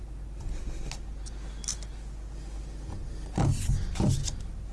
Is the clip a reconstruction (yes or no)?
no